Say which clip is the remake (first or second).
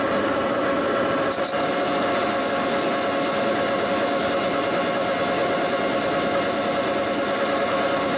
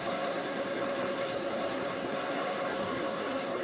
second